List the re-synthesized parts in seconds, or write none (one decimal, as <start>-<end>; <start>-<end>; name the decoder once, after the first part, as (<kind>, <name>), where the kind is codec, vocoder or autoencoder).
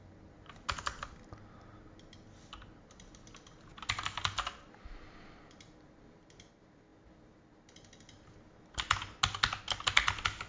none